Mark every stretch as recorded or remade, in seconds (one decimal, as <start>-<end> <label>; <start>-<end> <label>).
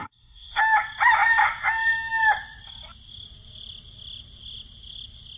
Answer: 0.0-0.6 remade; 0.6-5.4 recorded